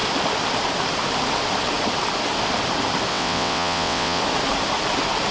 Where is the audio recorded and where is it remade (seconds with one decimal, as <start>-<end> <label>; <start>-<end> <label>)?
0.0-3.1 recorded; 3.1-4.2 remade; 4.2-5.3 recorded